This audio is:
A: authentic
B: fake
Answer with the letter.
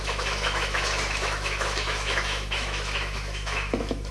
B